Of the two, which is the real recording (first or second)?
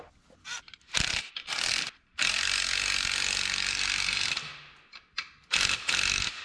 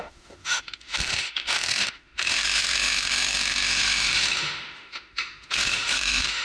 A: first